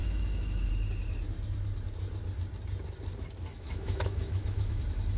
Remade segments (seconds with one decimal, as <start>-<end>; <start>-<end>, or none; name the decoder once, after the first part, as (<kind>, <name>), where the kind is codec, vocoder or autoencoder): 0.0-0.7 (autoencoder, DAC-VAE); 3.5-4.8